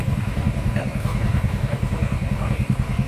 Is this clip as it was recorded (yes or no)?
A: no